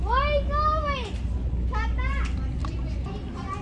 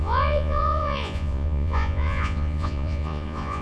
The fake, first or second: second